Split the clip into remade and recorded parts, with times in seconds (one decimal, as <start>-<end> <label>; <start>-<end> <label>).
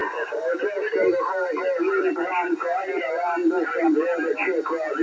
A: 0.0-5.0 recorded